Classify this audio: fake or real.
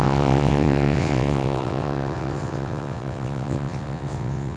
fake